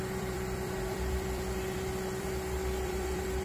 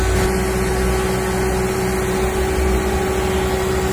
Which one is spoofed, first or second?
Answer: first